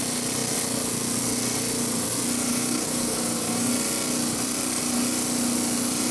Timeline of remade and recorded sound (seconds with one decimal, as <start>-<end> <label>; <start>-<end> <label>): 0.0-2.5 recorded; 2.5-3.7 remade; 3.7-6.1 recorded